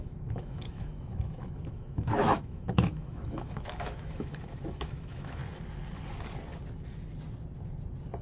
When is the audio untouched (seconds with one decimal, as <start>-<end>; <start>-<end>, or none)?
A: 5.4-8.2